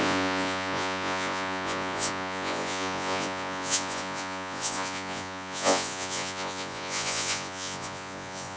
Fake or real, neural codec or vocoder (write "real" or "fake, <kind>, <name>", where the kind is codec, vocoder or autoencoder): fake, vocoder, Vocos